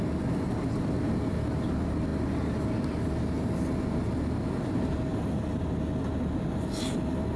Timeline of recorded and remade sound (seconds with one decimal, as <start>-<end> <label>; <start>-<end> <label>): 0.0-7.4 recorded